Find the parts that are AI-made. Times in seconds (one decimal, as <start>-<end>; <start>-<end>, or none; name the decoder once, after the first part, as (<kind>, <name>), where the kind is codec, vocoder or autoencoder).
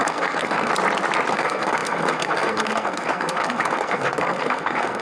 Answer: 0.0-0.7 (codec, SNAC); 1.3-5.0